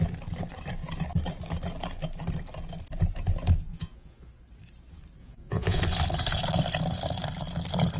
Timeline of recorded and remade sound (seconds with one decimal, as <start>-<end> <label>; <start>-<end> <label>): 0.0-3.7 recorded; 3.7-4.3 remade; 4.3-5.2 recorded; 5.2-5.8 remade; 5.8-8.0 recorded